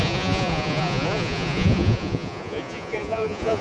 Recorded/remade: remade